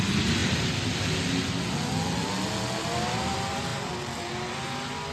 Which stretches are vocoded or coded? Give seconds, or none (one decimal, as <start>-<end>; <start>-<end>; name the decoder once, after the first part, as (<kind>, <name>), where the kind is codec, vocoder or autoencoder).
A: none